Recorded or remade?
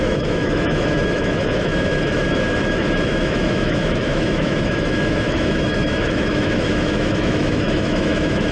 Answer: remade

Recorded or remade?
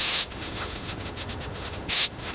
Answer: remade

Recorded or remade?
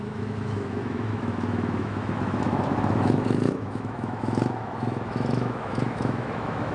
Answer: remade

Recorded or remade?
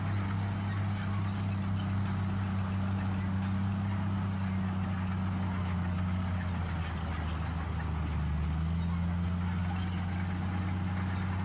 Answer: recorded